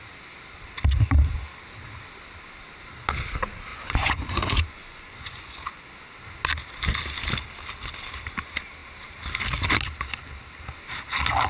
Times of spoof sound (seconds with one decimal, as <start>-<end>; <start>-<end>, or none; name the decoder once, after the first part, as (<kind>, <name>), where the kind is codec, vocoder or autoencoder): 3.7-5.8 (vocoder, Vocos)